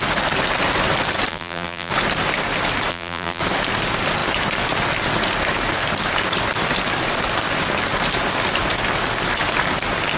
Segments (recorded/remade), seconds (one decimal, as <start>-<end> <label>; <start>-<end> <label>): 0.0-1.3 recorded; 1.3-1.9 remade; 1.9-2.9 recorded; 2.9-3.4 remade; 3.4-10.2 recorded